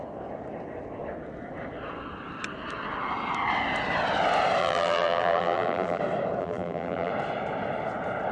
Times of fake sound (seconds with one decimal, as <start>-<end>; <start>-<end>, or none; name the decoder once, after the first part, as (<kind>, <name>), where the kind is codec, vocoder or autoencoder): 4.6-6.0 (vocoder, BigVGAN v2); 6.4-7.1